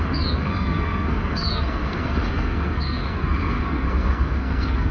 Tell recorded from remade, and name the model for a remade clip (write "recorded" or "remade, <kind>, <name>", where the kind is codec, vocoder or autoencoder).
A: remade, codec, SNAC